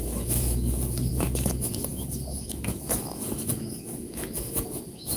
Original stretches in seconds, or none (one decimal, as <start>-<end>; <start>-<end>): none